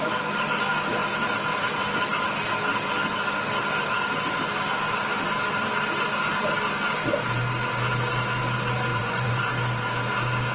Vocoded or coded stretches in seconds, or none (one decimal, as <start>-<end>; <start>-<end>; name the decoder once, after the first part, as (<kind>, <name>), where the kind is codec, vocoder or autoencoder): 8.9-9.5 (vocoder, Vocos)